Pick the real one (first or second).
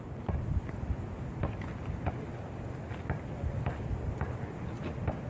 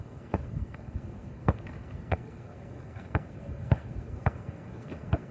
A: first